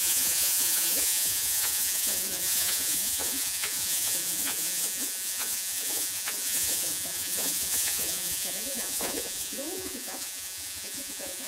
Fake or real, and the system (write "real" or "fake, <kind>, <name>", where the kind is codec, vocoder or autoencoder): fake, vocoder, Vocos